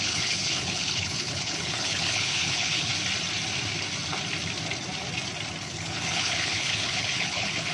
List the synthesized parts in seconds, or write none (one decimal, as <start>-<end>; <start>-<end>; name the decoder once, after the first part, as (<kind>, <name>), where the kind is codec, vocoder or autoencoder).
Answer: 0.0-2.9 (codec, HILCodec); 5.6-7.7